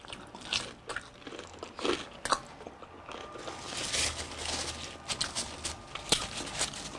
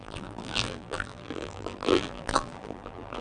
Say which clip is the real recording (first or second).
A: first